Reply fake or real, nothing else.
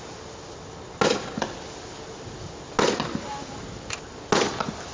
real